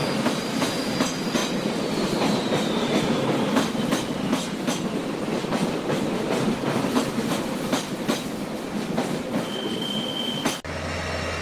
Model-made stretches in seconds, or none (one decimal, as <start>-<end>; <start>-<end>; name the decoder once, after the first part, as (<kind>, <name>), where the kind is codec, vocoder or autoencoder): 0.0-0.9 (vocoder, BigVGAN v2); 1.4-2.5